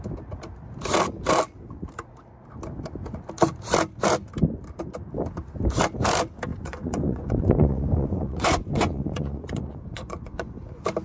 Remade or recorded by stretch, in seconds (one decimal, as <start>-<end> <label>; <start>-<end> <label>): 0.0-6.5 recorded; 6.5-10.5 remade; 10.5-11.0 recorded

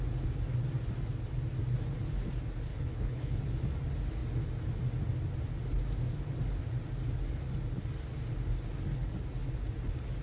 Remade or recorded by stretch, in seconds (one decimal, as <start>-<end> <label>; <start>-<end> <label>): 0.0-2.7 recorded; 2.7-3.4 remade; 3.4-10.2 recorded

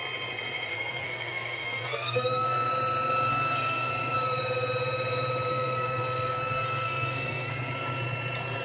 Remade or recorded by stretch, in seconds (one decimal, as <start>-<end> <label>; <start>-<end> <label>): 0.0-0.7 recorded; 0.7-2.7 remade; 2.7-3.3 recorded; 3.3-3.9 remade; 3.9-5.5 recorded; 5.5-7.5 remade; 7.5-8.6 recorded

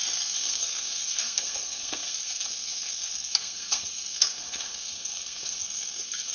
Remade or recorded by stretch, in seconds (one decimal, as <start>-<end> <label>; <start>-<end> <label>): 0.0-6.3 remade

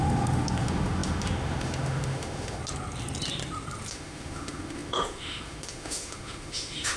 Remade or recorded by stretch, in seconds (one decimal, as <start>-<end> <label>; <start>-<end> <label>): 0.0-2.6 remade; 2.6-3.9 recorded; 3.9-7.0 remade

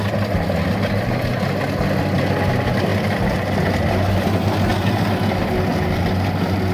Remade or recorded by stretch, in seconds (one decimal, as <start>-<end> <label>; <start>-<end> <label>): 0.0-6.7 recorded